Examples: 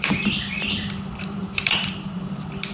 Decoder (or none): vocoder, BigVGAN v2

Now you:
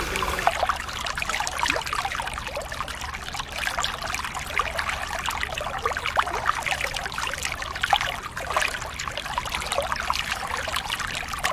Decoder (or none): none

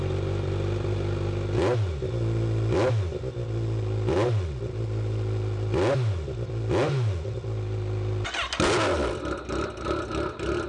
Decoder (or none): none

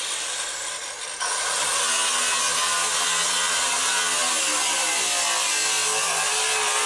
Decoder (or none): none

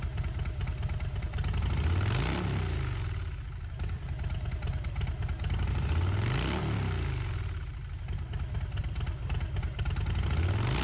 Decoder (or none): none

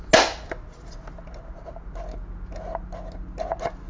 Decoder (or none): none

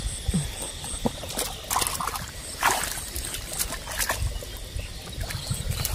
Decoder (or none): none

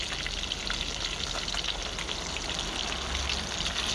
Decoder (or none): none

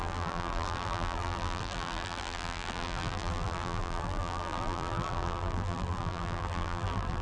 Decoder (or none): vocoder, BigVGAN v2